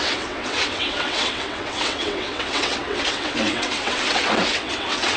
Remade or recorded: remade